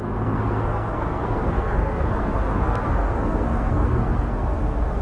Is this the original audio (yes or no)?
no